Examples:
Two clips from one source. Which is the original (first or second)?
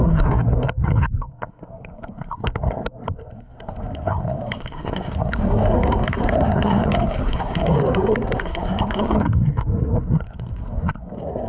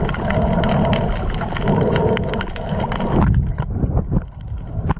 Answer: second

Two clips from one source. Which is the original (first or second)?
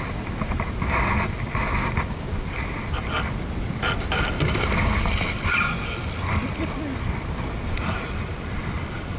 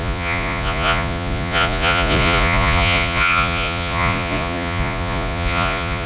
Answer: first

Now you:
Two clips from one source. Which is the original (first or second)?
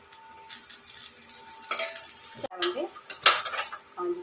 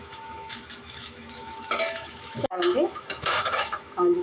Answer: first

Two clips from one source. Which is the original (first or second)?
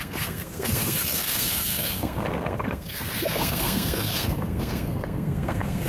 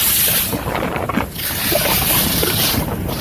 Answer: second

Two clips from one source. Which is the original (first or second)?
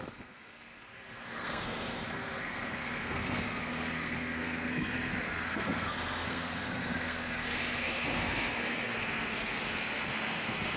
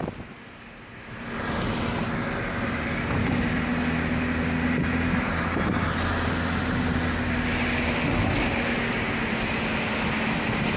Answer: second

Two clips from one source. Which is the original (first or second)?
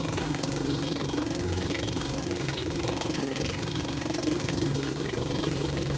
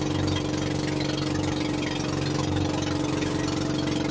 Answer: second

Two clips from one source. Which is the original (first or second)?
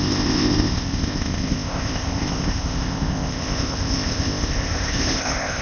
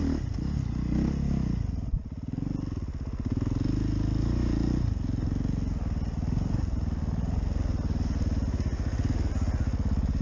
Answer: second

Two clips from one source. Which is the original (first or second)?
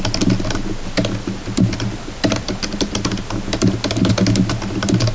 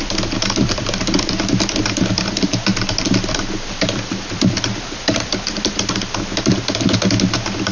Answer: first